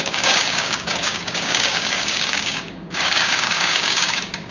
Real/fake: fake